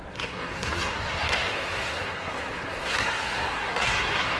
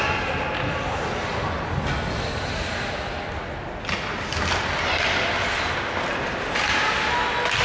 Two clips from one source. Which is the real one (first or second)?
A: second